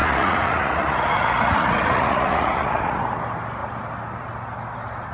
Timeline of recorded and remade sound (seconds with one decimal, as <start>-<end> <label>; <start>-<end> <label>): 0.0-3.1 remade; 3.1-5.1 recorded